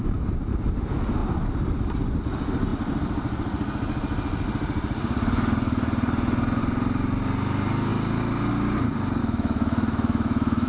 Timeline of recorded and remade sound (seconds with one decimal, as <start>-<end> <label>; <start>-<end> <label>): 0.0-9.2 recorded; 9.2-10.7 remade